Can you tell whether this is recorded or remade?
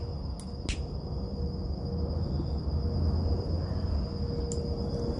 recorded